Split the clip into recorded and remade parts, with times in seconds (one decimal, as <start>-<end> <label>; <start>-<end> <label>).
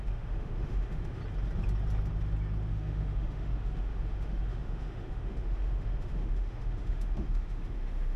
0.0-1.2 remade; 1.2-2.7 recorded; 2.7-8.2 remade